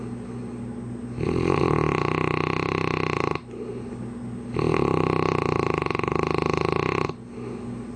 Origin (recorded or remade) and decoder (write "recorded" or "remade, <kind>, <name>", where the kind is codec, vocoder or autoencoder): recorded